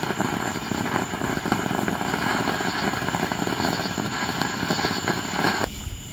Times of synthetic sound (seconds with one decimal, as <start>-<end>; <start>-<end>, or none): 0.5-2.5